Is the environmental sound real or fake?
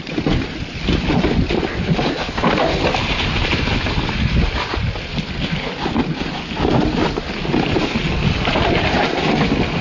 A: real